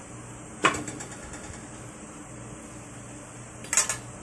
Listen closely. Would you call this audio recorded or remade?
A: recorded